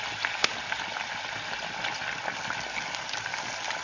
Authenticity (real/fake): real